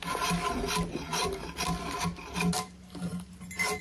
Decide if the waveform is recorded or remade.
recorded